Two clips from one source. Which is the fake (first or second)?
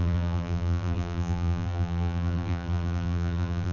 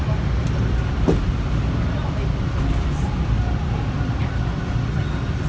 first